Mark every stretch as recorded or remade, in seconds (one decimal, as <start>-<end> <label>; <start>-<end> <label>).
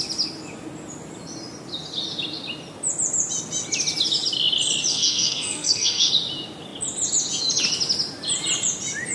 0.0-4.9 recorded; 4.9-6.1 remade; 6.1-9.1 recorded